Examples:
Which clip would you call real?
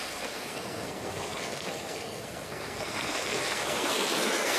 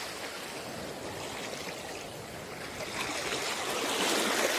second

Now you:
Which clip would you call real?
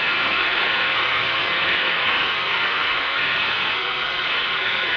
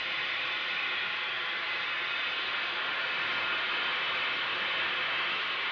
second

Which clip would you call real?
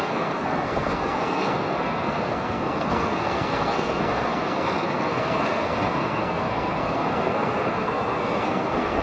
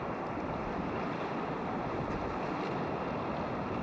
second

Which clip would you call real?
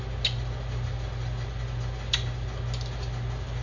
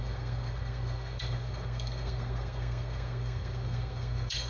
first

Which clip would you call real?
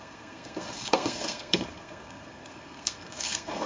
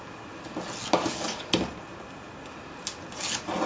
second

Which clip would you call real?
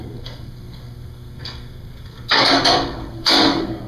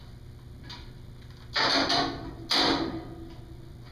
second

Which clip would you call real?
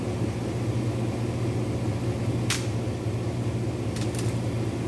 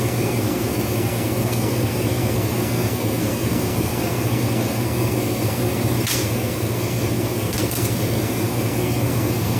first